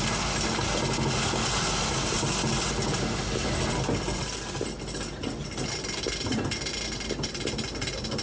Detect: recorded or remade recorded